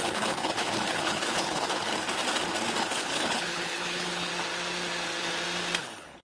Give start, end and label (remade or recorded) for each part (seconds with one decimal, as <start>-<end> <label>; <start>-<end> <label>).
0.0-1.9 remade; 1.9-2.8 recorded; 2.8-4.3 remade; 4.3-5.8 recorded; 5.8-6.2 remade